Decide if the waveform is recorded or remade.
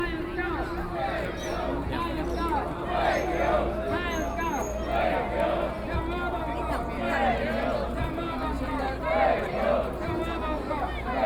recorded